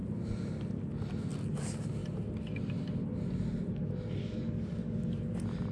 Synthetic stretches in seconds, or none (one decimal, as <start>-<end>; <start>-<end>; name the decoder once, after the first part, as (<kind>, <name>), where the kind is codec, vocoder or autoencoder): 4.2-5.1 (codec, DAC)